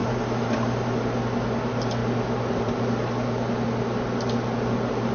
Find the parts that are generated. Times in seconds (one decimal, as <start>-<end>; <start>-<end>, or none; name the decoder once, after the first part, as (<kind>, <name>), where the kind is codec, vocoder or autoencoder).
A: 0.0-0.8 (vocoder, BigVGAN v2)